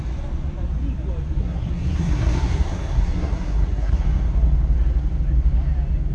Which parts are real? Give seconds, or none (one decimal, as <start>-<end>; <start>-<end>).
0.0-1.4; 4.0-6.1